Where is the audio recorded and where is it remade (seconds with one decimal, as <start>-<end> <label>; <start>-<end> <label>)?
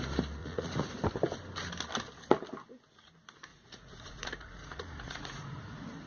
0.0-0.4 recorded; 0.4-1.0 remade; 1.0-3.5 recorded; 3.5-6.1 remade